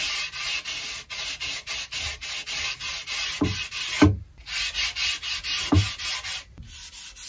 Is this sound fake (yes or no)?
no